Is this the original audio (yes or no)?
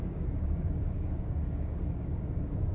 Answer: no